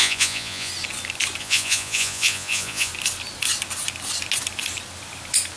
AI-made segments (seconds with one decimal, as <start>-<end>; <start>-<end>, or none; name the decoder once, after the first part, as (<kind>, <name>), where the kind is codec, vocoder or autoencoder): 0.0-0.7 (vocoder, Vocos); 1.4-2.9